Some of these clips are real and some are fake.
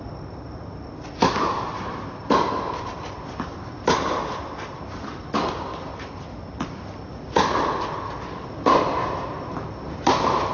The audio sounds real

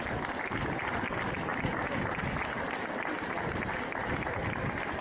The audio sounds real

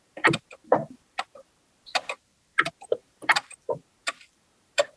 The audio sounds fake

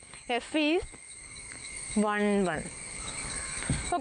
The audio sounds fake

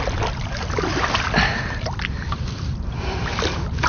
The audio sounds real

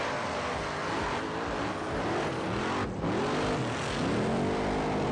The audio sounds real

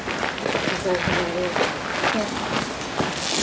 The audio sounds real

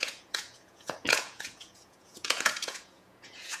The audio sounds fake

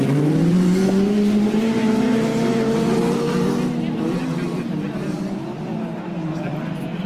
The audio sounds real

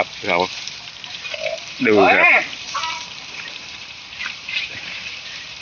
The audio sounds fake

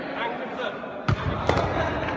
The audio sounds real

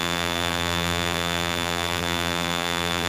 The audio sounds fake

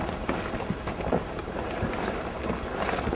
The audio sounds real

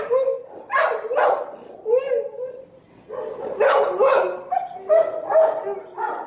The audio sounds real